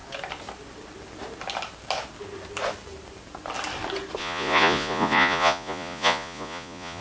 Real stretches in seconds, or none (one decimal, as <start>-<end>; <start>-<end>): 0.0-4.2